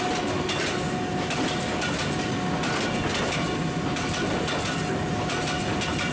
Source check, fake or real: real